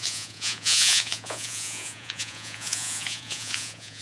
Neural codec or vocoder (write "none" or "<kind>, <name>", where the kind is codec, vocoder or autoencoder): vocoder, Vocos